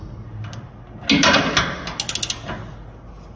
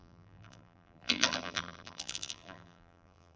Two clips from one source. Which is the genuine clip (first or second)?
first